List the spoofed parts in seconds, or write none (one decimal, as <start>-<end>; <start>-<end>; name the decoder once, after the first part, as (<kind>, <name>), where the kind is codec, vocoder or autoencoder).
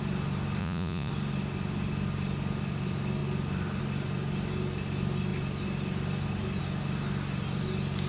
0.6-1.1 (vocoder, Vocos)